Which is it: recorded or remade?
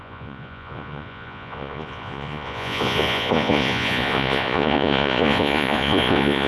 remade